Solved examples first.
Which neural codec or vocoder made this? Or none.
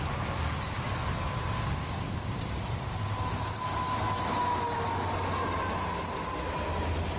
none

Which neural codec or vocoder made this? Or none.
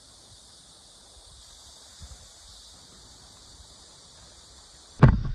none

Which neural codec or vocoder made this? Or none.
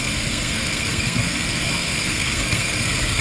codec, SNAC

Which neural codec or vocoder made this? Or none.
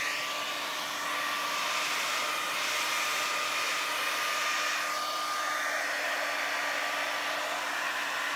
none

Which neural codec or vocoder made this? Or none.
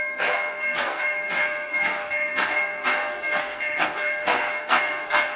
codec, SNAC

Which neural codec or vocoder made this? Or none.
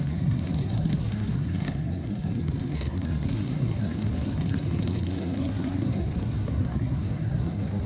codec, SNAC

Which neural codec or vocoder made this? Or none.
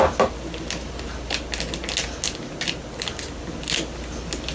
none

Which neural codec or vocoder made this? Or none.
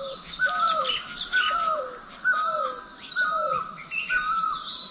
none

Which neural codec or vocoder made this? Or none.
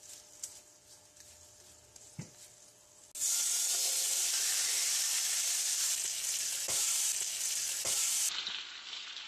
none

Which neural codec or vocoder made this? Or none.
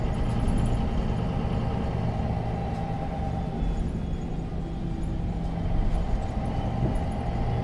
none